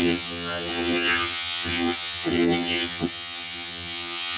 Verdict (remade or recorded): remade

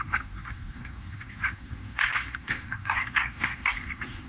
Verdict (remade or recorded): remade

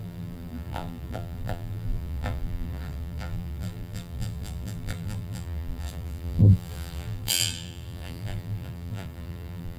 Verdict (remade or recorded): remade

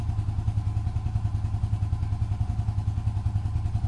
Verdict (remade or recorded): recorded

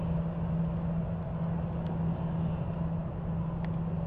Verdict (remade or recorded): recorded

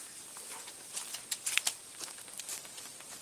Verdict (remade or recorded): remade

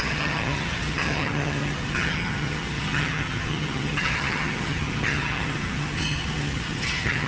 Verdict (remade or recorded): remade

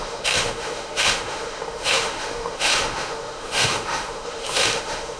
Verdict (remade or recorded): remade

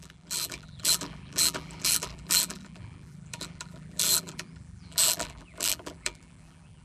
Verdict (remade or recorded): remade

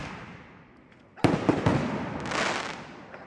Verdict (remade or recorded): recorded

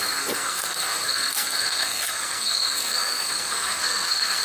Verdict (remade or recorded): remade